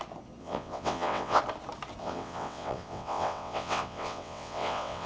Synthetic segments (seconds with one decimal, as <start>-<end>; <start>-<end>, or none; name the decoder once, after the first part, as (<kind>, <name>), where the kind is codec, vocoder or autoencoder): 0.4-1.4 (vocoder, WaveNeXt); 2.0-5.1